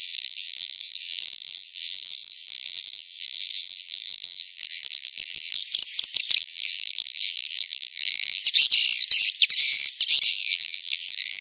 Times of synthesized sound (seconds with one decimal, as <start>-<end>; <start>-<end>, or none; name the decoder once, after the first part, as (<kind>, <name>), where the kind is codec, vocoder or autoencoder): 0.0-5.6 (vocoder, BigVGAN v2); 6.4-8.4; 10.3-11.4